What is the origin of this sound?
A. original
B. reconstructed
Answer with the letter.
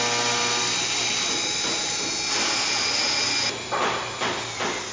A